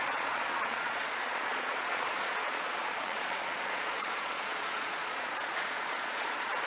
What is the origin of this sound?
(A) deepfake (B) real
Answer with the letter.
A